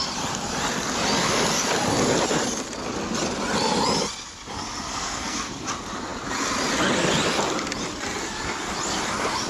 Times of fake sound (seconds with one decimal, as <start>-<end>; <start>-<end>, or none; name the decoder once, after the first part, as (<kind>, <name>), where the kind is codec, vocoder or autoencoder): 4.9-5.5 (codec, SNAC)